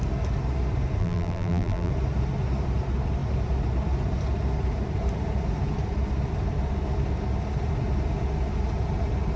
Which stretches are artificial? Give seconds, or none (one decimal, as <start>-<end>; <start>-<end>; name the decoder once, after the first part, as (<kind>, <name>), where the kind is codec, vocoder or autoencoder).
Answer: 1.0-1.9 (vocoder, BigVGAN v2)